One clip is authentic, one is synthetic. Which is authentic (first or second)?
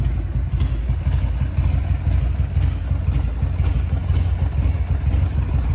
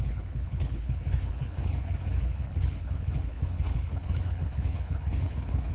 first